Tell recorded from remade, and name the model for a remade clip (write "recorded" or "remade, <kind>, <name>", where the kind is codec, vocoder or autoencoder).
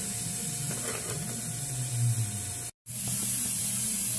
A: recorded